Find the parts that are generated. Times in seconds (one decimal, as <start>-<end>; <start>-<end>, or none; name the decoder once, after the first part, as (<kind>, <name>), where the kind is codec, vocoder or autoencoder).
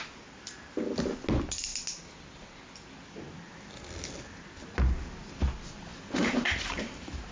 5.9-7.3 (vocoder, BigVGAN v2)